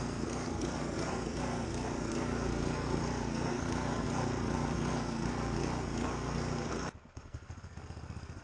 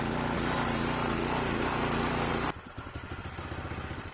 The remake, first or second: first